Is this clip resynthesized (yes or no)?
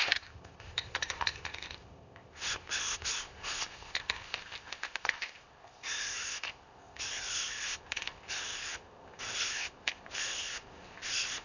yes